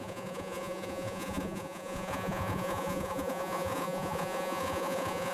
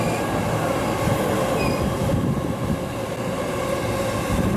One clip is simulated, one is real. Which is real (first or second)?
second